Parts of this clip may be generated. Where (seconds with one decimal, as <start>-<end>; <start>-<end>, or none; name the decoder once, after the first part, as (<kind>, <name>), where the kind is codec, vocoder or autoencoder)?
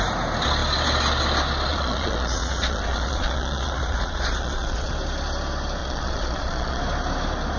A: 1.7-4.9 (vocoder, Vocos); 5.8-6.8